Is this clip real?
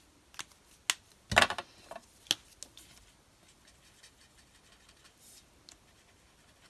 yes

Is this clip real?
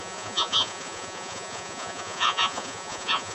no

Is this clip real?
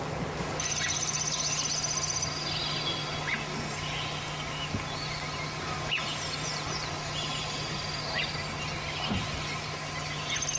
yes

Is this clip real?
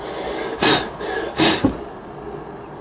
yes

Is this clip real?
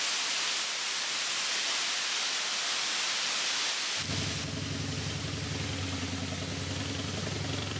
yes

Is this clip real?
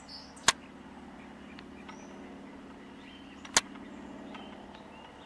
yes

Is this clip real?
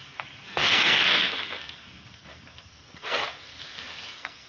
no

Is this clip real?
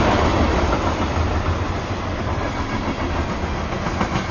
yes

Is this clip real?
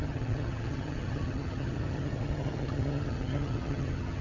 no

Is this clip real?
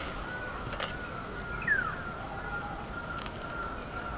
yes